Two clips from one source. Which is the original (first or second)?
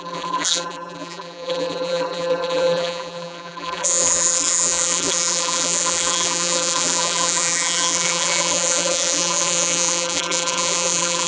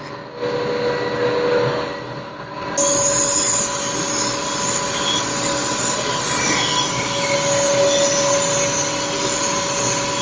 second